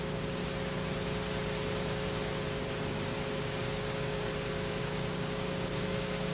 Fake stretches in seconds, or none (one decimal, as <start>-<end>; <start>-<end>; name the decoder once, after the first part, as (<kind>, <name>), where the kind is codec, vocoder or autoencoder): 0.0-0.4 (codec, DAC); 3.3-4.3; 4.8-6.3